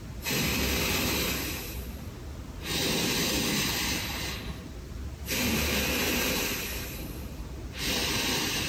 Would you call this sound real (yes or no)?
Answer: yes